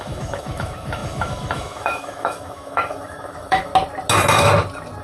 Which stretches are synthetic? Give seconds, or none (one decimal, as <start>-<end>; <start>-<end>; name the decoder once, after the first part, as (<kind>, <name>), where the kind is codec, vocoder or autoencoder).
0.0-3.7 (autoencoder, DAC-VAE)